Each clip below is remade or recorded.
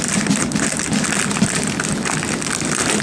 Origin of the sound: remade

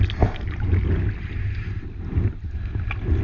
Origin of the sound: recorded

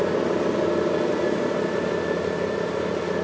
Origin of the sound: recorded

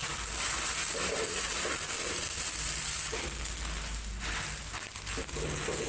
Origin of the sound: recorded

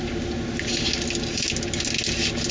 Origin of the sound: recorded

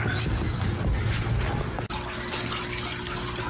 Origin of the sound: recorded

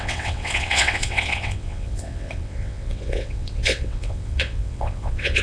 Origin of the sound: remade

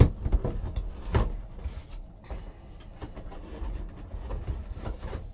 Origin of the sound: recorded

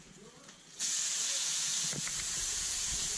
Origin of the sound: remade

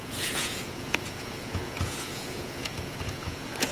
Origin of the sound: remade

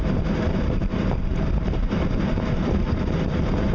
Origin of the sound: remade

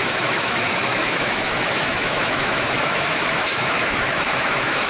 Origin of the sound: remade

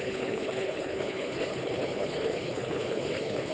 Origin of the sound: remade